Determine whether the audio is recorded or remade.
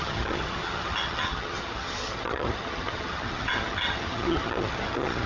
remade